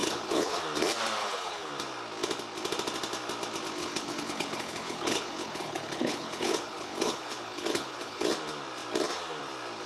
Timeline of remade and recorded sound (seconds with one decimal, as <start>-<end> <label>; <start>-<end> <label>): 0.0-0.6 remade; 0.6-1.2 recorded; 1.2-1.7 remade; 1.7-3.8 recorded; 3.8-8.3 remade; 8.3-9.9 recorded